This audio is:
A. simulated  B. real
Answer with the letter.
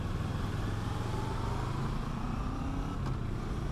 B